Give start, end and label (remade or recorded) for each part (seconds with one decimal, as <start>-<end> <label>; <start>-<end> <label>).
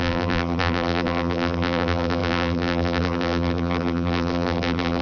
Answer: 0.0-5.0 remade